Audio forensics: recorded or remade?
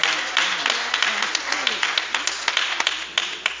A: recorded